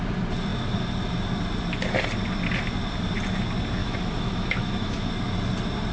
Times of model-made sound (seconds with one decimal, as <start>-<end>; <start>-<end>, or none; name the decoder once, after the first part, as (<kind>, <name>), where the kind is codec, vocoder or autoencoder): 3.8-5.1 (autoencoder, DAC-VAE)